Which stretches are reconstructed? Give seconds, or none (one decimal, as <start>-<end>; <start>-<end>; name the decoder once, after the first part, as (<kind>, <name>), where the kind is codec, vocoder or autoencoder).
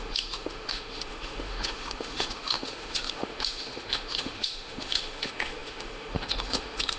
0.0-7.0 (autoencoder, DAC-VAE)